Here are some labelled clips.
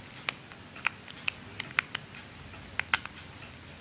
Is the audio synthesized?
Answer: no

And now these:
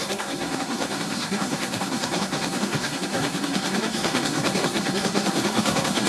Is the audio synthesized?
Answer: yes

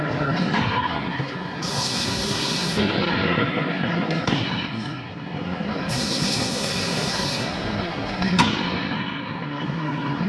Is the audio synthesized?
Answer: yes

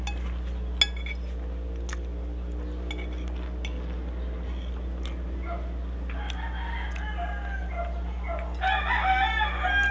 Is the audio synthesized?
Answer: no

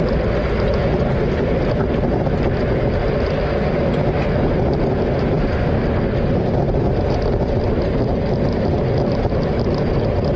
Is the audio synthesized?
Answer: no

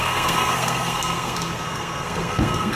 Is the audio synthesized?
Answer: yes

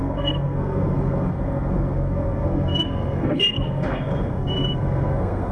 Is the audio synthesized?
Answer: yes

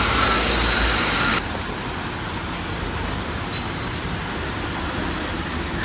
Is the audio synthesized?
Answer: no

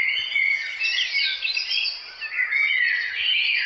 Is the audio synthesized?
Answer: no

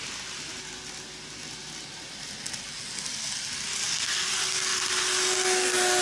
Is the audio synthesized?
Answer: no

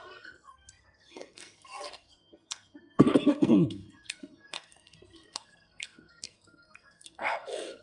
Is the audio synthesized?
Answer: yes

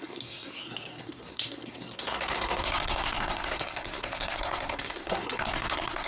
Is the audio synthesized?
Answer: yes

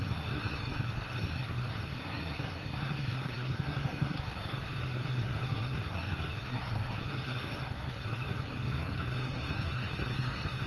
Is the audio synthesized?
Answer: yes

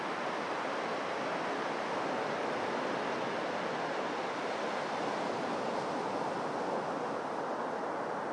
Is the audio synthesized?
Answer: no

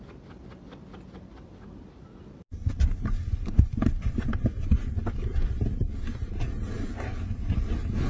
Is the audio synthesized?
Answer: no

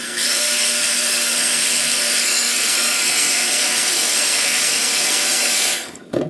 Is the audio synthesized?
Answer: yes